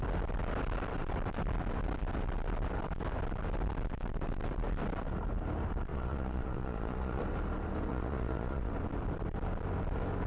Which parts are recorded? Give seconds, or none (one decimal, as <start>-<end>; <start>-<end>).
0.0-5.9; 7.2-7.9; 8.7-10.3